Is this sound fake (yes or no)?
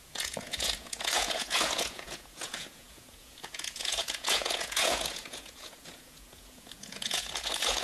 yes